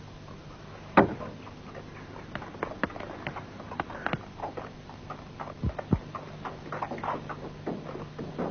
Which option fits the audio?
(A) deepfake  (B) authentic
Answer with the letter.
B